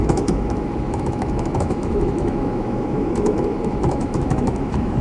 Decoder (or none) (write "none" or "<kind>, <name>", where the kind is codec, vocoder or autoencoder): autoencoder, DAC-VAE